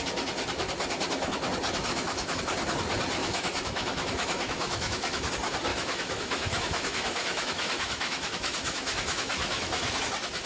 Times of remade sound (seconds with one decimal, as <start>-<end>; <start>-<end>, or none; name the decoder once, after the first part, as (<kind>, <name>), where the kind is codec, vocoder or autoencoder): 1.9-2.4 (autoencoder, DAC-VAE); 3.2-5.3; 5.7-10.0